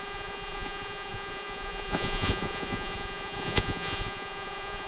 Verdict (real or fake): fake